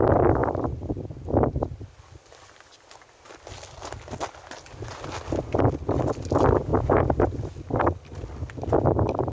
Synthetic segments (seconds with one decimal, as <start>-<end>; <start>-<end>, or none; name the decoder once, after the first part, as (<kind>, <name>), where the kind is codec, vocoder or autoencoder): none